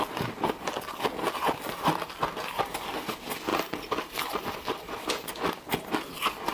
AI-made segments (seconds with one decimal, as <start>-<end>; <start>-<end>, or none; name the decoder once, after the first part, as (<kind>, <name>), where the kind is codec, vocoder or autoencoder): 3.5-5.3 (vocoder, BigVGAN v2)